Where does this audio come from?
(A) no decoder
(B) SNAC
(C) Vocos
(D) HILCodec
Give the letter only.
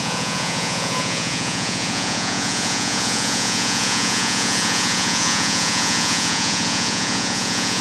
C